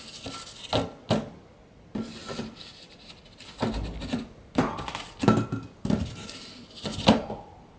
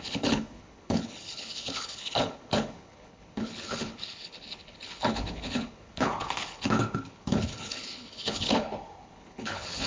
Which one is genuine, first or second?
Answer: first